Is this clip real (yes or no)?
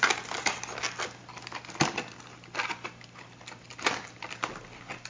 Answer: yes